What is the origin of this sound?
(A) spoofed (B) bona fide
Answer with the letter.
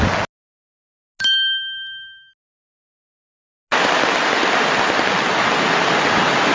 B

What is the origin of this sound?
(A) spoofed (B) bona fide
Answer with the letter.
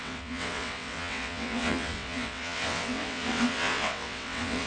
A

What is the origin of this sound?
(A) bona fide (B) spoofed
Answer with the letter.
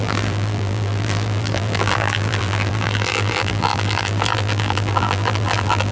B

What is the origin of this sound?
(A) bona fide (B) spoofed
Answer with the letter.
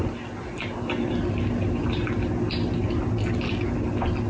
A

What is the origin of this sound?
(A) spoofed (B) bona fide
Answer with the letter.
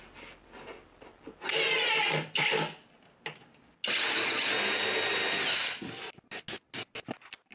B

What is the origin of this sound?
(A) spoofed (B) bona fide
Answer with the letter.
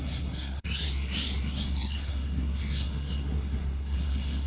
A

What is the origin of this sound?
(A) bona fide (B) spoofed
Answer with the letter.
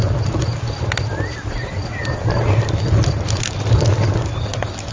A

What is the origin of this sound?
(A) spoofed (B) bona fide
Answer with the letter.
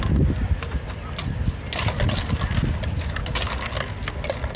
B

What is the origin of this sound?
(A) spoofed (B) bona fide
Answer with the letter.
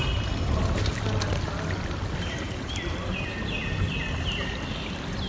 B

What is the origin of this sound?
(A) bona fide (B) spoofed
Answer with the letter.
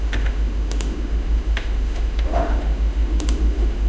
B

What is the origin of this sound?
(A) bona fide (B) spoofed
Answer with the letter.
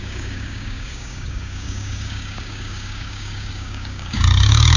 B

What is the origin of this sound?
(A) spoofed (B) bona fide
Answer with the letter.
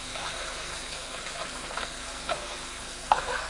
A